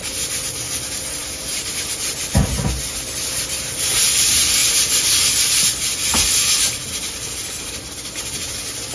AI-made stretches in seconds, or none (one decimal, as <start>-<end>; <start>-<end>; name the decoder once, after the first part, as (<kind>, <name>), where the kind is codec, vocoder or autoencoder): 4.6-5.2 (vocoder, BigVGAN v2)